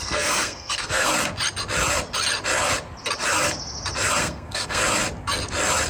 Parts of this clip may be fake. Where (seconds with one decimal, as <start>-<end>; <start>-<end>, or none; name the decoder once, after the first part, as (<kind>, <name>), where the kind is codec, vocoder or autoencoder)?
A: 0.0-1.1 (codec, SNAC); 4.2-4.8

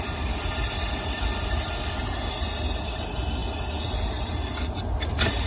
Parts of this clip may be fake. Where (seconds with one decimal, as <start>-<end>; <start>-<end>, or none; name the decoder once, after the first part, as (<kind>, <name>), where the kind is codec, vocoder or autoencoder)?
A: none

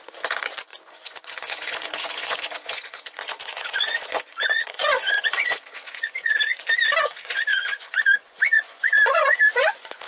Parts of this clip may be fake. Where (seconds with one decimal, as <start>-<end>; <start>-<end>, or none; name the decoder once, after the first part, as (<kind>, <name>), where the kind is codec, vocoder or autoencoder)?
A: 0.0-6.5 (vocoder, Vocos); 7.0-10.1

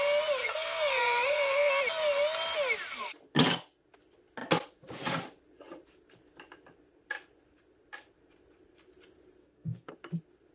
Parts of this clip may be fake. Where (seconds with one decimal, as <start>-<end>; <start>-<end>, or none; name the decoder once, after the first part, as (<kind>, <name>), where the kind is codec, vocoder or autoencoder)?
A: 0.4-1.7 (codec, SNAC); 9.4-9.9

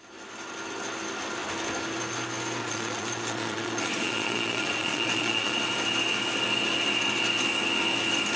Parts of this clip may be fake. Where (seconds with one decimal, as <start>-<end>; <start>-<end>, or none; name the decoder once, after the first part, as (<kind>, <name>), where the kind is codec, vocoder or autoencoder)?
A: 2.6-5.6 (vocoder, Vocos)